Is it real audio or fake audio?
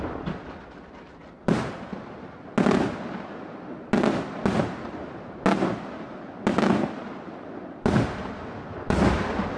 real